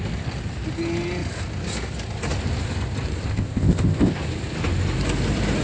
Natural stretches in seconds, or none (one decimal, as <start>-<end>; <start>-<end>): 0.0-3.3; 4.2-5.6